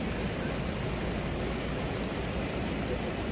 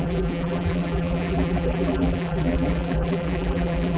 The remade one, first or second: second